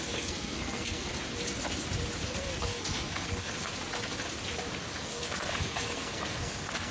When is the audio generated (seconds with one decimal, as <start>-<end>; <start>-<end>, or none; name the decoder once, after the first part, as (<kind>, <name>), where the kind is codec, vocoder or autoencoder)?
0.0-1.1 (codec, SNAC); 2.3-3.7; 4.9-6.9